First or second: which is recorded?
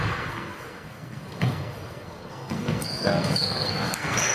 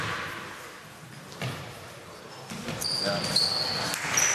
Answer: second